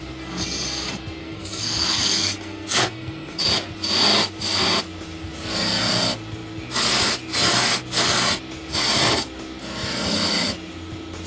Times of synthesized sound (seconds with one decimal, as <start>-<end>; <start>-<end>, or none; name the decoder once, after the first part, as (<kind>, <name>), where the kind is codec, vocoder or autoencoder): 1.2-3.4 (codec, SNAC)